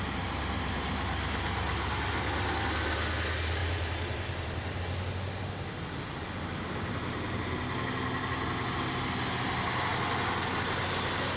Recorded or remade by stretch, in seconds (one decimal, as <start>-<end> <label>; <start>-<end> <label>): 0.0-3.6 recorded; 3.6-4.8 remade; 4.8-11.4 recorded